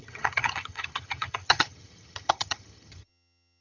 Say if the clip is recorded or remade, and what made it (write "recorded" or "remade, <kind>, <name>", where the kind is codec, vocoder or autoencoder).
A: remade, vocoder, HiFi-GAN